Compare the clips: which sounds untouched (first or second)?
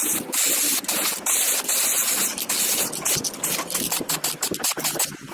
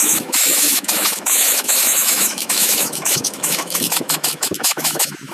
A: first